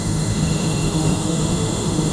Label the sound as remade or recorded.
remade